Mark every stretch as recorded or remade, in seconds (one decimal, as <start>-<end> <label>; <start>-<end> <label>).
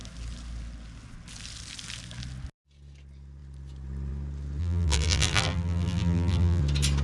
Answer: 0.0-4.6 recorded; 4.6-6.6 remade; 6.6-7.0 recorded